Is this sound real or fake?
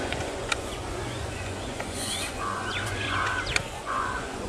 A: fake